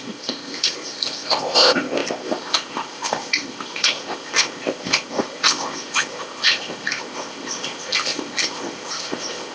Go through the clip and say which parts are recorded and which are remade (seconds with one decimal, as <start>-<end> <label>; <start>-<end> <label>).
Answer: 0.0-9.5 remade